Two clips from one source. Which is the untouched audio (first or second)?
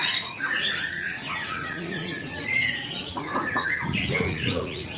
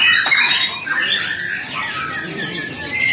second